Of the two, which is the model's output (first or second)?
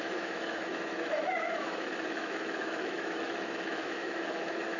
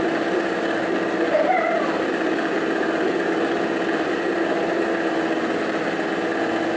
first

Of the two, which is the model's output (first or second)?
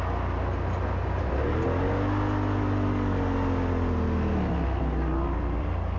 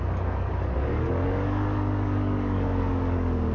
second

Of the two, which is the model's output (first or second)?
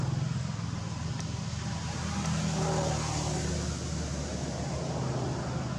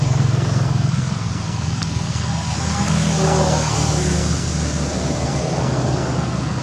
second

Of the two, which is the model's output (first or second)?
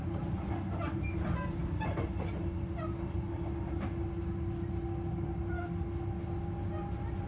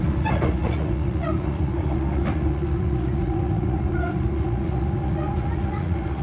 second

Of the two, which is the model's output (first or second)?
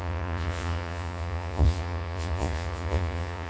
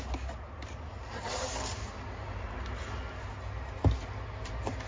first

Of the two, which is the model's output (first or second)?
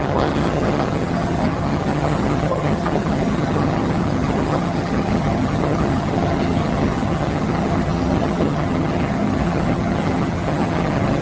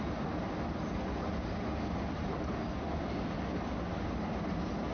first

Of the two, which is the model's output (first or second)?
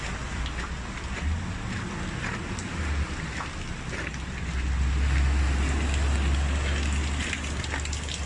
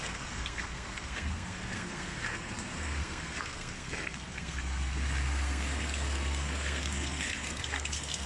second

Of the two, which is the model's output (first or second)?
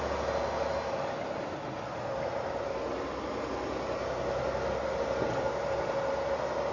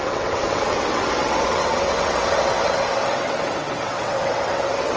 second